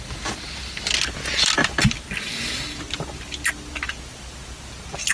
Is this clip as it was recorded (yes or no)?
yes